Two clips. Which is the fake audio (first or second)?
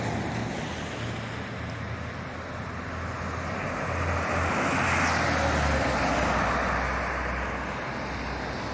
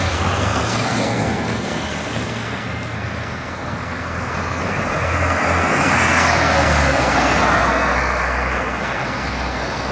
second